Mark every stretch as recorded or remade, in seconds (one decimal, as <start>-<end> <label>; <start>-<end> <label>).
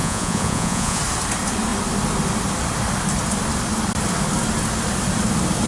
0.0-1.0 remade; 1.0-5.7 recorded